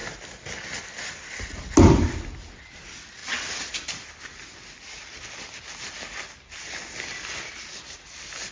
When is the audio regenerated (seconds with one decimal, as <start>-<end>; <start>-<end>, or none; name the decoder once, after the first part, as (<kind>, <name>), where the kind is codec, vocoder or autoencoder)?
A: none